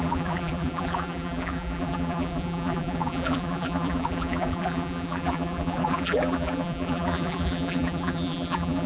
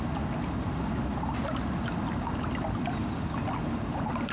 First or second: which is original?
second